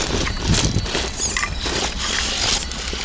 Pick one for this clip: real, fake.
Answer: real